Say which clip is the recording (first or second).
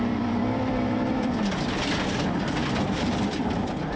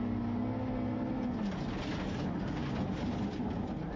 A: second